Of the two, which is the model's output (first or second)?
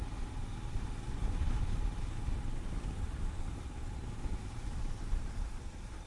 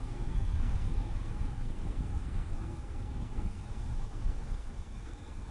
second